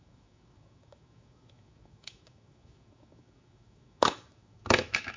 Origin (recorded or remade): remade